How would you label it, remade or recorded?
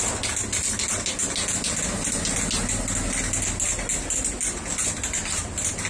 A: recorded